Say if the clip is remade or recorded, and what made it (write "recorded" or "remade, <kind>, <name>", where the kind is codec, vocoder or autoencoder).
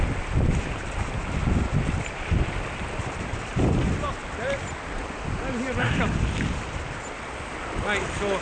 recorded